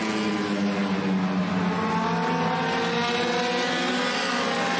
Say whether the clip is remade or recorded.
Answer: recorded